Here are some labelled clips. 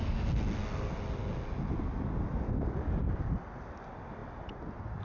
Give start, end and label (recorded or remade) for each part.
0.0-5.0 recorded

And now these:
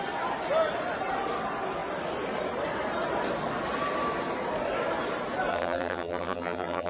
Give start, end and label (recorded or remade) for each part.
0.0-5.5 recorded; 5.5-6.9 remade

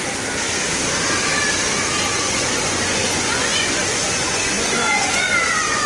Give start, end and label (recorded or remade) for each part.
0.0-2.1 recorded; 2.1-5.9 remade

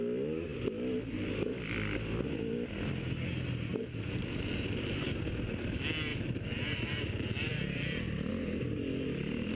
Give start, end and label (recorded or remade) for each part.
0.0-3.7 recorded; 3.7-5.1 remade; 5.1-6.1 recorded; 6.1-8.3 remade; 8.3-9.5 recorded

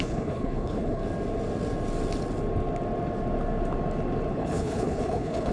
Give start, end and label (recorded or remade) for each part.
0.0-1.0 remade; 1.0-4.3 recorded; 4.3-5.5 remade

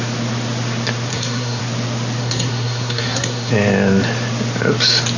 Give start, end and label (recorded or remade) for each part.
0.0-1.1 recorded; 1.1-1.6 remade; 1.6-2.2 recorded; 2.2-3.5 remade; 3.5-5.2 recorded

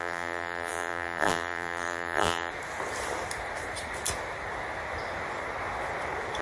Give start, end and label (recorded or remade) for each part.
0.0-2.5 remade; 2.5-6.4 recorded

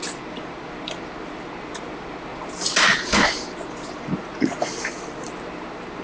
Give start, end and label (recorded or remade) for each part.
0.0-4.2 recorded; 4.2-4.7 remade; 4.7-6.0 recorded